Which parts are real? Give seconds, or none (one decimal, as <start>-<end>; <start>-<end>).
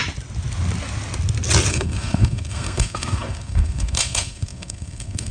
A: 0.0-1.7